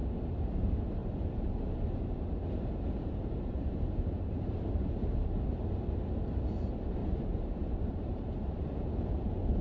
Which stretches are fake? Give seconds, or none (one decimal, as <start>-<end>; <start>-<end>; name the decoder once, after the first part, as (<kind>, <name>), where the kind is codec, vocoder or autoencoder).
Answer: 0.0-0.5 (vocoder, BigVGAN v2); 1.0-5.4; 7.0-8.5